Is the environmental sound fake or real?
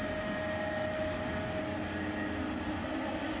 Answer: real